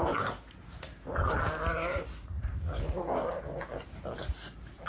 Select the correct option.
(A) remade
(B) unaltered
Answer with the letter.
B